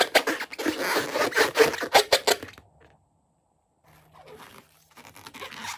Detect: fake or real real